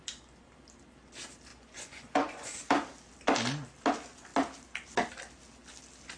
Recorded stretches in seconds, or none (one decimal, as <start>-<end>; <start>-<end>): 0.0-1.5; 2.6-6.2